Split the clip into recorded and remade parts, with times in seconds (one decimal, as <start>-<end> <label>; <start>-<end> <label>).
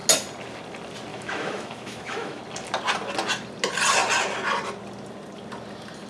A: 0.0-1.1 recorded; 1.1-2.4 remade; 2.4-6.1 recorded